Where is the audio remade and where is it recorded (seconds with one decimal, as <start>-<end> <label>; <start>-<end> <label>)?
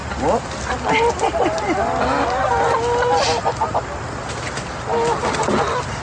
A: 0.0-6.0 recorded